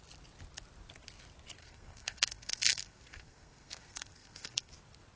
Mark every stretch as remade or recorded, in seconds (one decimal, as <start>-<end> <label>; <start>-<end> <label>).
0.0-1.6 recorded; 1.6-4.7 remade; 4.7-5.2 recorded